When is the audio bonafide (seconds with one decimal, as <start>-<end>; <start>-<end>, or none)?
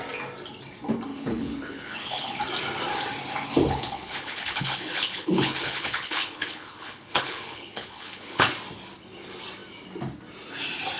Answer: 0.0-1.1; 2.4-3.6; 8.5-11.0